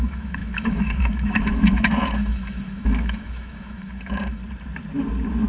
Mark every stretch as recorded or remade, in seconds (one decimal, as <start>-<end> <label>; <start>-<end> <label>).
0.0-4.4 remade; 4.4-5.5 recorded